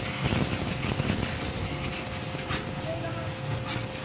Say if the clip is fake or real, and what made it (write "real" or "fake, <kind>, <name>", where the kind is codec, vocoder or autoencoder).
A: real